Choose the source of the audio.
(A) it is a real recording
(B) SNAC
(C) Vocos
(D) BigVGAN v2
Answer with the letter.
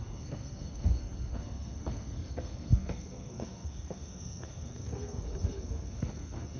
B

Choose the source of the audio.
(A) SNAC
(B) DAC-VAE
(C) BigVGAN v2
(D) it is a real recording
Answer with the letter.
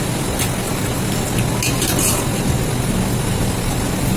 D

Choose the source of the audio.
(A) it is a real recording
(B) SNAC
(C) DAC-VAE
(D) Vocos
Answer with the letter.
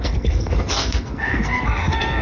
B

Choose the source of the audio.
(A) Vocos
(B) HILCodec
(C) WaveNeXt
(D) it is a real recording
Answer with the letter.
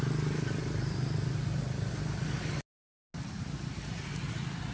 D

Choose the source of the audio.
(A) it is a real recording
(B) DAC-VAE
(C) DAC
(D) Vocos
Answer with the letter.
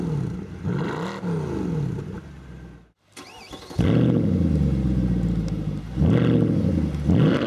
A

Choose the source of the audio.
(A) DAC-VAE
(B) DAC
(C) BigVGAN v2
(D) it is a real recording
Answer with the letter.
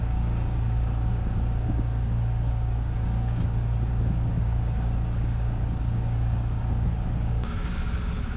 B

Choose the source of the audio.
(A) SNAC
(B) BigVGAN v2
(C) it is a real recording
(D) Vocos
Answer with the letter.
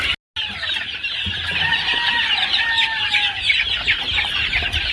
C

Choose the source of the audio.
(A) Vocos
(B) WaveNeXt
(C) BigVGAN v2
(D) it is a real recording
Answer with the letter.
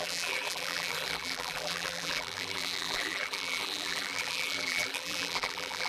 C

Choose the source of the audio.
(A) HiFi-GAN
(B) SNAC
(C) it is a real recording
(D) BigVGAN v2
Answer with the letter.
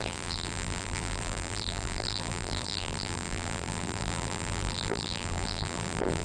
D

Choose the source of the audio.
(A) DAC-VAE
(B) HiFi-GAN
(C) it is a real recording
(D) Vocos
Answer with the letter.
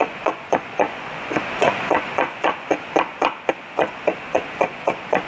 D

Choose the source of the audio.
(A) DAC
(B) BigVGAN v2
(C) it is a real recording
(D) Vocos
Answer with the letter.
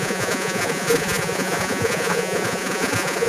D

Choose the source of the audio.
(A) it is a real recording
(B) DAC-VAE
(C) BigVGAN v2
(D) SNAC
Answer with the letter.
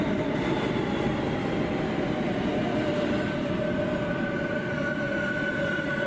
A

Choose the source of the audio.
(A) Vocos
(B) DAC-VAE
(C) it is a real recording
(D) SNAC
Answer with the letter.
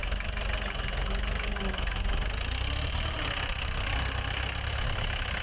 C